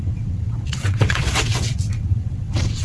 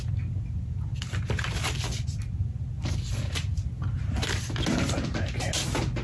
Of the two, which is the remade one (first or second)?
first